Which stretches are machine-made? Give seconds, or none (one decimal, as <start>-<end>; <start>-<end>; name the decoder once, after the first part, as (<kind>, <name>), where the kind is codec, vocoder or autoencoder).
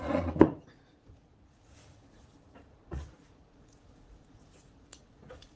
0.0-5.6 (vocoder, Vocos)